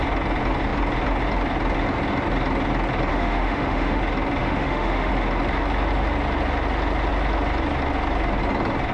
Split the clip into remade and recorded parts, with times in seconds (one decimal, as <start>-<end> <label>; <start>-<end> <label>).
0.0-3.1 recorded; 3.1-4.0 remade; 4.0-4.4 recorded; 4.4-5.1 remade; 5.1-8.9 recorded